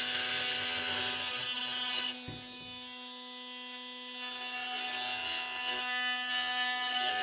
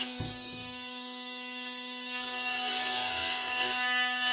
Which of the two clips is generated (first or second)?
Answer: second